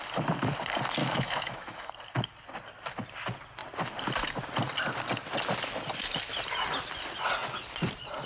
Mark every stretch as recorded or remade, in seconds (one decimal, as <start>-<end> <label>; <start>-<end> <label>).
0.0-1.0 recorded; 1.0-1.9 remade; 1.9-8.3 recorded